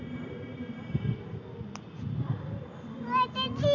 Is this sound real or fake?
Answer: real